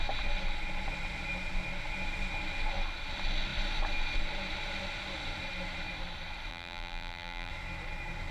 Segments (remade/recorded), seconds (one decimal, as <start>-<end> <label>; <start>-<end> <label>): 0.0-6.5 recorded; 6.5-7.5 remade; 7.5-8.3 recorded